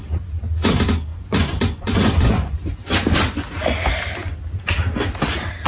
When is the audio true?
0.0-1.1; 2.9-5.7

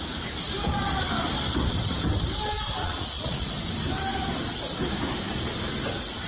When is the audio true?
0.0-2.8; 3.5-6.3

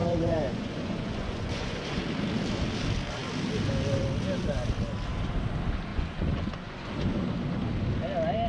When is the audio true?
2.0-5.9; 6.9-8.5

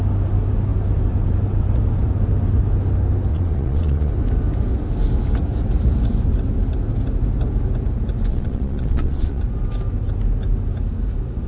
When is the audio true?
0.0-3.3; 4.1-8.3; 9.4-11.5